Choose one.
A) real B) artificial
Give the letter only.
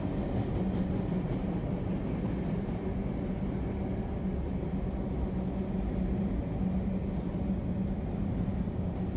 A